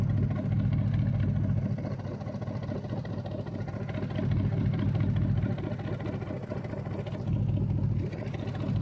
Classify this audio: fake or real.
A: real